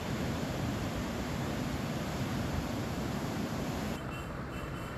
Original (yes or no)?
no